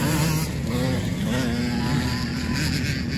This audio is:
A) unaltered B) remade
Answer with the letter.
A